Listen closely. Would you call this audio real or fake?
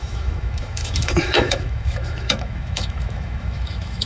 fake